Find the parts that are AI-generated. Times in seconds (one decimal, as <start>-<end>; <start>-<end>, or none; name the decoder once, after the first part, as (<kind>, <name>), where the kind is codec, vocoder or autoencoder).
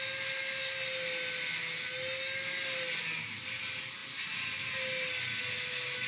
none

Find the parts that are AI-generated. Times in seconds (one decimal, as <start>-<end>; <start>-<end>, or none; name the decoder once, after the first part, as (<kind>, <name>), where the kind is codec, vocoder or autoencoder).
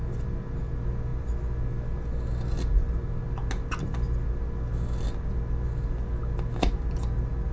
none